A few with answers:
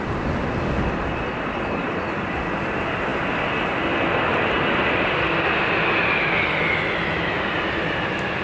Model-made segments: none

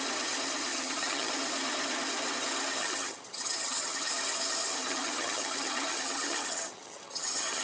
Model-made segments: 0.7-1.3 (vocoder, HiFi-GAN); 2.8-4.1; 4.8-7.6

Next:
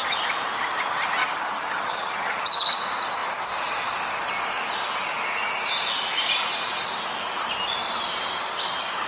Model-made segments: 1.2-2.7 (vocoder, HiFi-GAN)

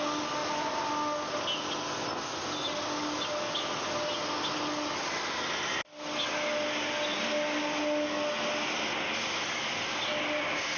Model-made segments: none

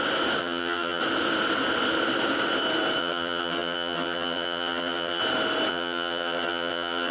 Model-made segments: 0.4-1.0 (vocoder, HiFi-GAN); 3.0-5.2; 5.7-7.1